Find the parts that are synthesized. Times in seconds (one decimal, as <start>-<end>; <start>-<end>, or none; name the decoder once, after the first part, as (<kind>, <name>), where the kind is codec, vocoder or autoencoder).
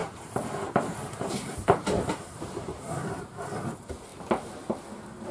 0.0-3.2 (vocoder, BigVGAN v2)